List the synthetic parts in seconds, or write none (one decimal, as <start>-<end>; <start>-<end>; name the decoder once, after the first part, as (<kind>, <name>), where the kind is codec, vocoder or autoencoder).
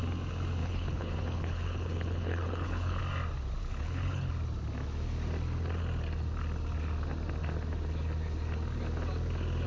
0.6-3.0 (codec, HILCodec); 3.6-4.3